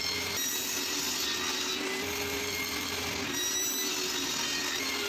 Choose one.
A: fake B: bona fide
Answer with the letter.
B